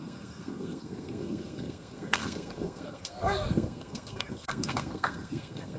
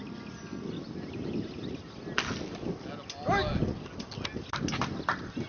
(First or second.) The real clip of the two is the second